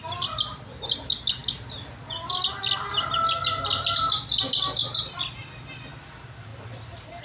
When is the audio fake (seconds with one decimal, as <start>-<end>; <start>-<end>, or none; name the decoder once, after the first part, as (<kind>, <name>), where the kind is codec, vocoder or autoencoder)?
none